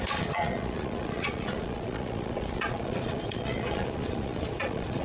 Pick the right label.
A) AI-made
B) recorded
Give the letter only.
A